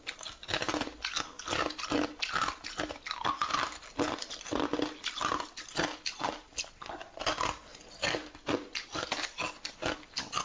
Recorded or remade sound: recorded